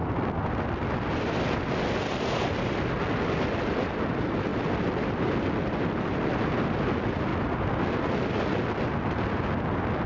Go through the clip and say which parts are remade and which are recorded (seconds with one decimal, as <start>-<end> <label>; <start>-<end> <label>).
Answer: 0.0-10.1 recorded